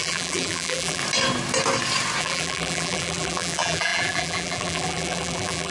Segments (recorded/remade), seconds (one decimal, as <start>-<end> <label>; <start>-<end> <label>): 0.0-1.0 remade; 1.0-2.2 recorded; 2.2-5.7 remade